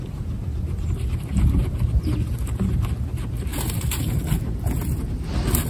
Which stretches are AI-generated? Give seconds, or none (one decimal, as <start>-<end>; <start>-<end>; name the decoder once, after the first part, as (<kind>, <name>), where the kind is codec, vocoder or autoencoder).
none